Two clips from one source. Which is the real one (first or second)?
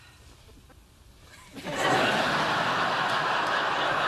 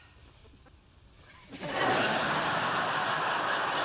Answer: first